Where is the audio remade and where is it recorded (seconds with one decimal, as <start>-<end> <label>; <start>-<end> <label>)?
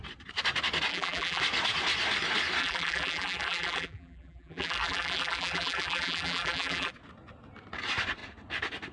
0.0-0.9 recorded; 0.9-1.4 remade; 1.4-2.6 recorded; 2.6-6.9 remade; 6.9-8.9 recorded